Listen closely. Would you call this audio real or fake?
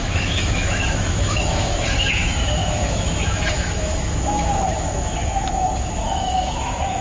fake